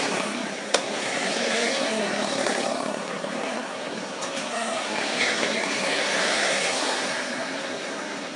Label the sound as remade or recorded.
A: remade